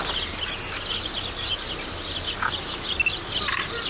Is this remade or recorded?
recorded